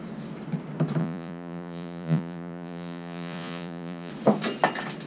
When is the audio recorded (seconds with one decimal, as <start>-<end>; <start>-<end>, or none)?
0.0-1.0; 4.1-5.1